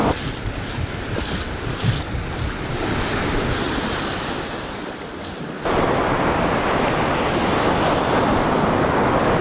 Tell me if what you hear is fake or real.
real